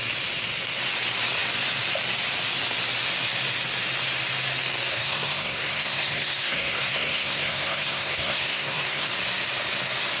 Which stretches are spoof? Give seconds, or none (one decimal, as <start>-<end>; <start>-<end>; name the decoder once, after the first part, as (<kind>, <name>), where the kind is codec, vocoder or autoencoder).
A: 4.9-9.1 (codec, SNAC)